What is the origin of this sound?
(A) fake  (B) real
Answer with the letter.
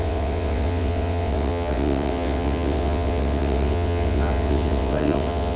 A